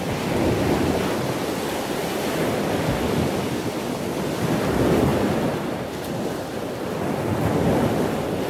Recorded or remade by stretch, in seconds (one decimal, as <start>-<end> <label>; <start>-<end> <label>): 0.0-8.5 recorded